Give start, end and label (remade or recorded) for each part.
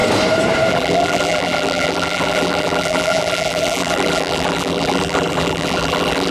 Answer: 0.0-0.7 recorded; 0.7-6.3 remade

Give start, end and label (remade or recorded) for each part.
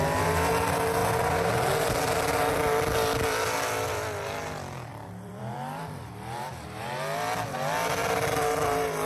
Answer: 0.0-1.0 recorded; 1.0-1.5 remade; 1.5-4.9 recorded; 4.9-6.8 remade; 6.8-9.1 recorded